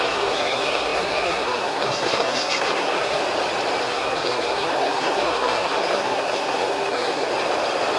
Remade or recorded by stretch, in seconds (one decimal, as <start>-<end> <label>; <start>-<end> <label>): 0.0-3.2 remade; 3.2-3.8 recorded; 3.8-7.3 remade; 7.3-8.0 recorded